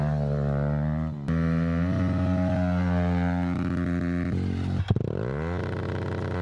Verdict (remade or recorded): recorded